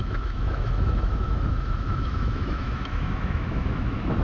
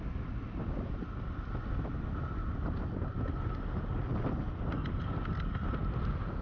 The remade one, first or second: first